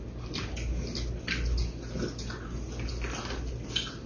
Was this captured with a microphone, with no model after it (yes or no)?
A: yes